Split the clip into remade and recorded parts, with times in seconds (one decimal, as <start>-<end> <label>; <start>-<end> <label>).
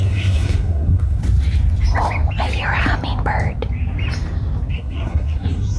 0.0-1.2 remade; 1.2-4.7 recorded; 4.7-5.8 remade